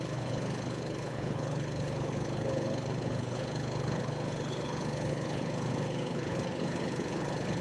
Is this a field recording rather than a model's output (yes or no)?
no